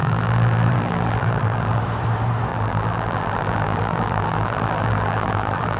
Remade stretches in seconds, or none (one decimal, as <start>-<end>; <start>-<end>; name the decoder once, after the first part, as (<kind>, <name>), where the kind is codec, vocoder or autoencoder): 0.0-1.8 (vocoder, BigVGAN v2); 2.5-5.8